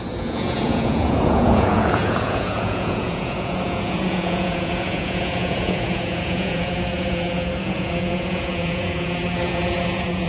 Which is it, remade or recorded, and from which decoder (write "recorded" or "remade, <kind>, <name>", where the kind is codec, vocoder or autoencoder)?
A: remade, vocoder, Vocos